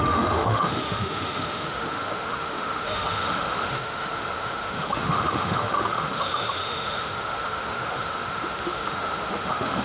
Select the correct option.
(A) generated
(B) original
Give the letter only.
A